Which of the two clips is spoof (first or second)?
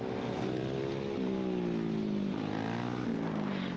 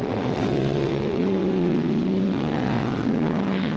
second